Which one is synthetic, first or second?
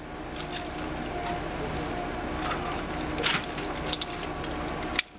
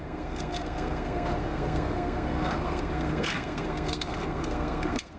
second